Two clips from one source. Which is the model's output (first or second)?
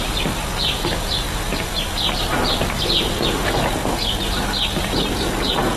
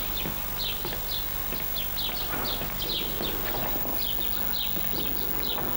first